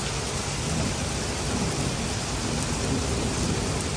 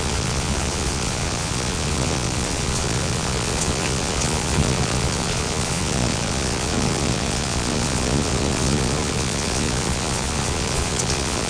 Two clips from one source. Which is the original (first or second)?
first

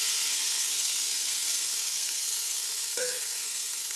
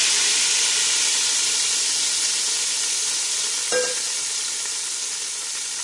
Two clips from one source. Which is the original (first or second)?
second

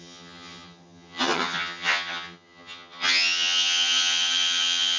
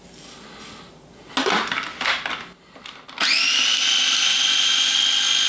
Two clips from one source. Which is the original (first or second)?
second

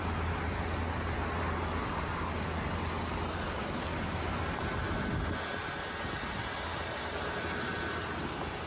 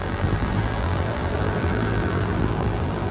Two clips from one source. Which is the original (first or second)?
first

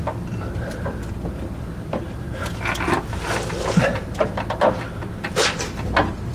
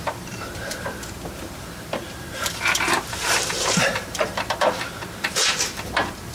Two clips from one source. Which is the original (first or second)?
first